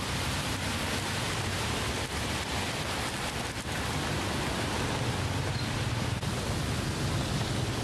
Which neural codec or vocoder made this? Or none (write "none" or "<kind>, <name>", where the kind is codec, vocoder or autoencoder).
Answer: none